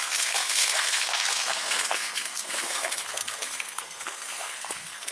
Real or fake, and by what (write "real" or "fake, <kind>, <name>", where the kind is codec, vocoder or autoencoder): fake, codec, SNAC